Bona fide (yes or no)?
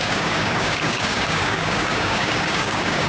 no